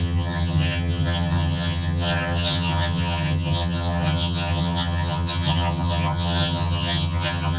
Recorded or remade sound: remade